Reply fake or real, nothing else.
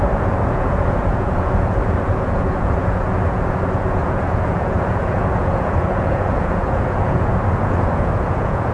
fake